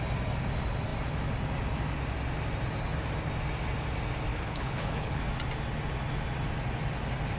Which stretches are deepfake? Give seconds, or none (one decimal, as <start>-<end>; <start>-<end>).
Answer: 4.3-5.2